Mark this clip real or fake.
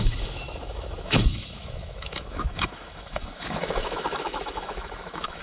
fake